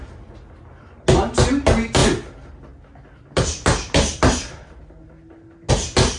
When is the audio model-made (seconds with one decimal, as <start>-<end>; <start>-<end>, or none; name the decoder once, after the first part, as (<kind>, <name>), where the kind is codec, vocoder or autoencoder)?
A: none